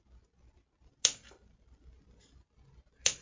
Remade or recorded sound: recorded